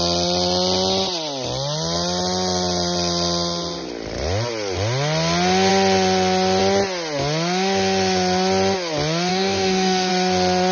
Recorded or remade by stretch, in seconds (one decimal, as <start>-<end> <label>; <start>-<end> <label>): 0.0-9.3 recorded; 9.3-10.1 remade; 10.1-10.7 recorded